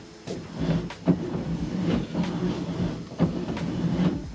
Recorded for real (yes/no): yes